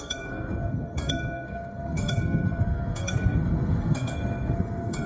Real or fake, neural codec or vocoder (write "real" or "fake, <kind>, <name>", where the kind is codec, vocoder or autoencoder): fake, codec, SNAC